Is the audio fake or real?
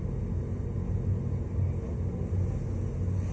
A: real